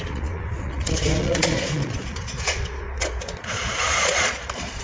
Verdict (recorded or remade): remade